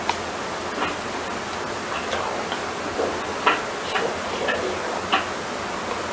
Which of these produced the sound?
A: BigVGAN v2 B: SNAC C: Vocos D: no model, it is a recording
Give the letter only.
D